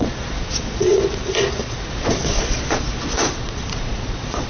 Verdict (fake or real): fake